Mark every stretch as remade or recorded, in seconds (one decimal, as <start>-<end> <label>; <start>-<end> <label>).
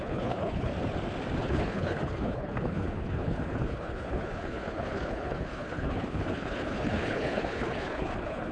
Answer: 0.0-0.7 remade; 0.7-1.4 recorded; 1.4-8.5 remade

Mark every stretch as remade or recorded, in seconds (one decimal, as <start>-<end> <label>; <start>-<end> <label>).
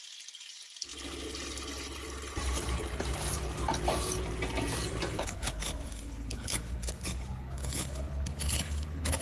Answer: 0.0-5.1 recorded; 5.1-9.2 remade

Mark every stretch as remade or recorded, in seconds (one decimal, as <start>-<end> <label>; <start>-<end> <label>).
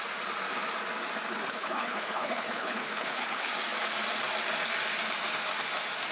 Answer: 0.0-1.3 recorded; 1.3-3.5 remade; 3.5-6.1 recorded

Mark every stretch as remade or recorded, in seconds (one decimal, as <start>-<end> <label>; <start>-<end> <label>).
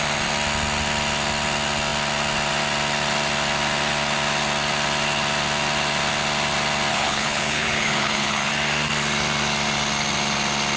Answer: 0.0-6.9 recorded; 6.9-8.5 remade; 8.5-10.8 recorded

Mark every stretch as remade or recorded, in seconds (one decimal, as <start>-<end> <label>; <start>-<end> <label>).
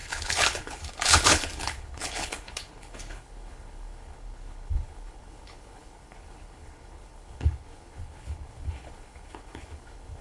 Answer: 0.0-10.2 remade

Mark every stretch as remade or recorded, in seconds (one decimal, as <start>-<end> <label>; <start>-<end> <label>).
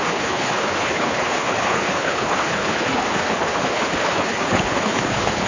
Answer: 0.0-5.5 remade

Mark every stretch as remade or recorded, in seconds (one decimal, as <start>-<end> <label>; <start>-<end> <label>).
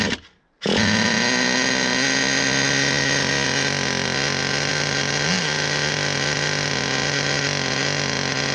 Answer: 0.0-8.5 recorded